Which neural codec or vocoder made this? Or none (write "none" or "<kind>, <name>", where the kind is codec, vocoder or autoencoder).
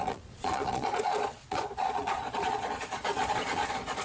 vocoder, Vocos